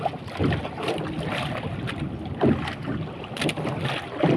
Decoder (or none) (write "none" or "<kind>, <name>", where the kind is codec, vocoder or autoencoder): none